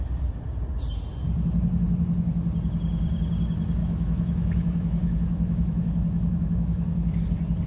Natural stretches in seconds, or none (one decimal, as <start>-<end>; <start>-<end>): 0.0-3.8; 7.2-7.7